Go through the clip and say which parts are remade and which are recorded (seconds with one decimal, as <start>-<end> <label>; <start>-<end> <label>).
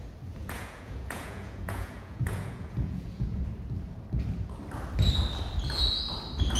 0.0-0.4 recorded; 0.4-3.4 remade; 3.4-6.6 recorded